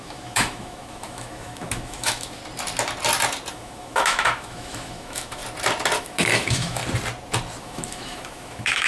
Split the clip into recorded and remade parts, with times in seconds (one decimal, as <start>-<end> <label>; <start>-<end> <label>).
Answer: 0.0-2.4 remade; 2.4-3.5 recorded; 3.5-5.4 remade; 5.4-6.0 recorded; 6.0-6.8 remade; 6.8-7.6 recorded; 7.6-8.9 remade